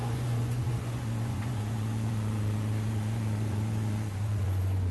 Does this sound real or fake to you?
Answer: fake